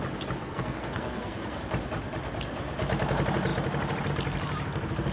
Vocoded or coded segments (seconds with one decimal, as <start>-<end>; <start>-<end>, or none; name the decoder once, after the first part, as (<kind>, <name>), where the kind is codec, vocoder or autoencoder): 0.4-1.6 (codec, SNAC)